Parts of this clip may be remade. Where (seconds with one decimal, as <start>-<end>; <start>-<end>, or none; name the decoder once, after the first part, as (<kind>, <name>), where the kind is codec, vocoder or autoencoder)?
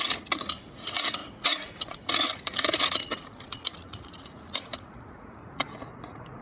0.0-6.4 (vocoder, Vocos)